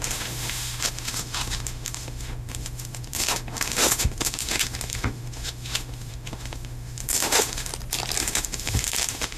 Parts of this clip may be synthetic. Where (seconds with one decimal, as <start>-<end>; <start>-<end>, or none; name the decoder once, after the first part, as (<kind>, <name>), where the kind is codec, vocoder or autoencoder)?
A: 0.0-7.7 (autoencoder, DAC-VAE); 8.2-9.4